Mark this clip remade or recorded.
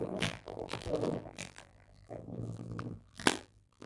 remade